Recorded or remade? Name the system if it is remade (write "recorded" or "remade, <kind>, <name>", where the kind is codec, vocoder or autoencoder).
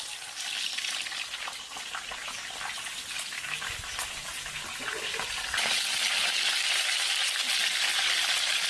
recorded